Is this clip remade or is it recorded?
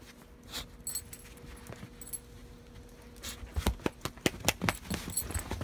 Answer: recorded